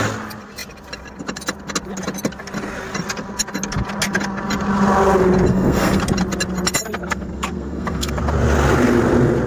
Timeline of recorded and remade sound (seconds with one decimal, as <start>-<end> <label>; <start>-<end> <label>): 0.0-5.5 recorded; 5.5-6.0 remade; 6.0-7.0 recorded; 7.0-8.2 remade; 8.2-9.5 recorded